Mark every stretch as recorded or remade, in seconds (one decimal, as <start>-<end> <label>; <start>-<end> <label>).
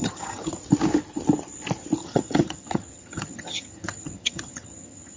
0.0-0.6 remade; 0.6-2.0 recorded; 2.0-5.2 remade